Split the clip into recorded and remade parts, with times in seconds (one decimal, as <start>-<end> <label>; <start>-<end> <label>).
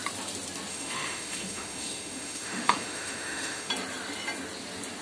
0.0-0.7 recorded; 0.7-3.7 remade; 3.7-5.0 recorded